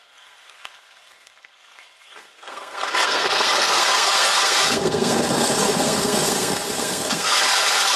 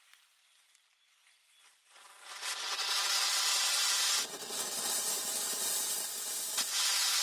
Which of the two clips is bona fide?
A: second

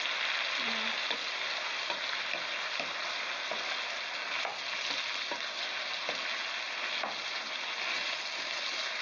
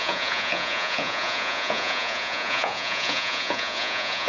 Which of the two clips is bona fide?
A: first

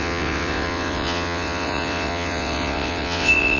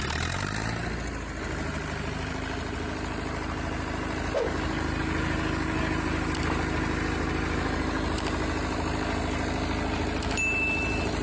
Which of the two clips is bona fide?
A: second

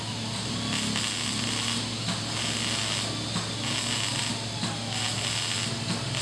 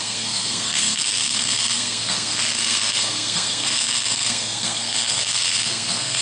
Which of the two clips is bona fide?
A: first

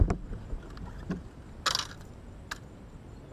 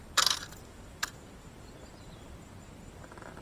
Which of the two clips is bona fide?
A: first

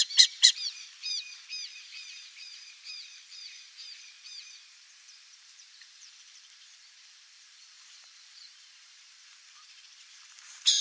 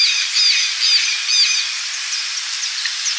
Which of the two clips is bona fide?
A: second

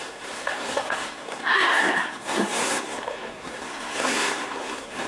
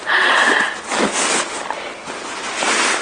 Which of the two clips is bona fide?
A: second